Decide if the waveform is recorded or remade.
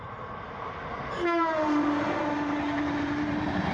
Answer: remade